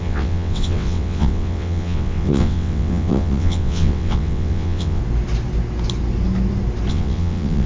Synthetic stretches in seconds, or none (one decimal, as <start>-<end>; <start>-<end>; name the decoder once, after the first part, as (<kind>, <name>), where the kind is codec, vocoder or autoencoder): 0.0-5.0 (vocoder, WaveNeXt); 6.9-7.7